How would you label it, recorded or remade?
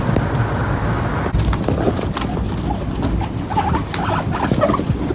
recorded